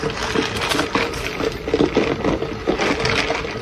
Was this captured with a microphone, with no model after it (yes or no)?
yes